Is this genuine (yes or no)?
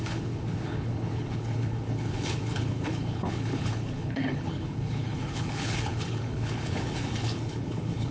no